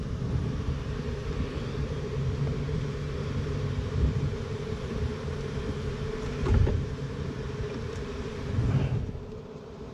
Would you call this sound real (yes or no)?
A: no